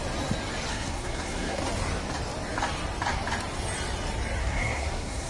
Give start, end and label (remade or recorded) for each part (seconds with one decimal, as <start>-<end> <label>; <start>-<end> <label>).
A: 0.0-0.7 recorded; 0.7-1.6 remade; 1.6-4.4 recorded; 4.4-5.3 remade